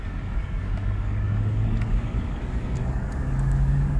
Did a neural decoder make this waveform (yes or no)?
yes